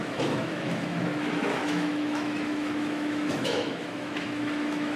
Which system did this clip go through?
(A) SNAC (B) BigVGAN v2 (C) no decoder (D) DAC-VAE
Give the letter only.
D